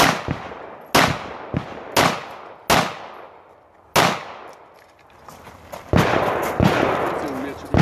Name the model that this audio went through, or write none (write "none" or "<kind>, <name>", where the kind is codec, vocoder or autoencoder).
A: none